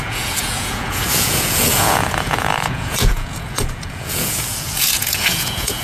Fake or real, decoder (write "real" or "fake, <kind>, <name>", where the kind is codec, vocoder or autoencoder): fake, vocoder, Vocos